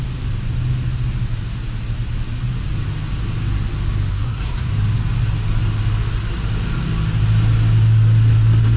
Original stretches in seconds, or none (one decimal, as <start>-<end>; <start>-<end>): 0.0-4.1; 4.7-8.8